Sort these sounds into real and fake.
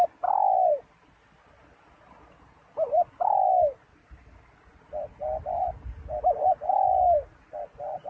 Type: real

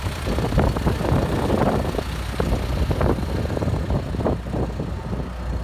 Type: real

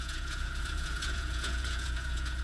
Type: fake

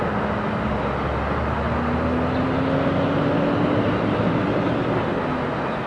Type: real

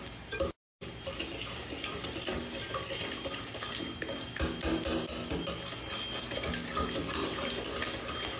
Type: real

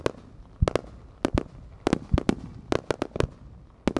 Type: real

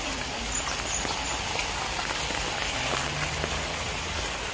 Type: real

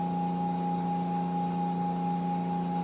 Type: real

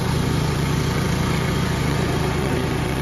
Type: fake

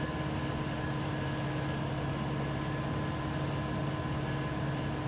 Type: real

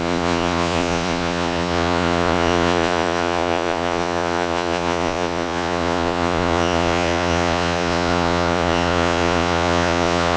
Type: fake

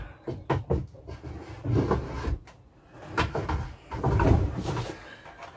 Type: real